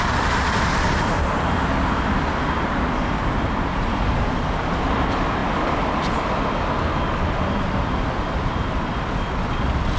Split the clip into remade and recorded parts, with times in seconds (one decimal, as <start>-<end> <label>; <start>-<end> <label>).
0.0-10.0 recorded